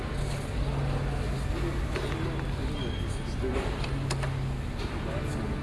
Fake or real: real